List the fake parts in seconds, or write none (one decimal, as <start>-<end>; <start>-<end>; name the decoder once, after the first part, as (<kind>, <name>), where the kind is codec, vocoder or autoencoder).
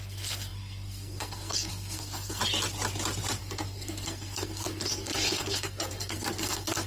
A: 0.0-2.4 (codec, SNAC); 3.4-6.9